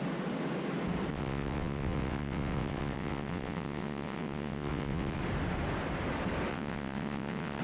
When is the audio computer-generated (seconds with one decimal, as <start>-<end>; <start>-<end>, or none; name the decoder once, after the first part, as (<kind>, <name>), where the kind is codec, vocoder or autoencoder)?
1.1-5.2 (vocoder, WaveNeXt); 6.5-7.6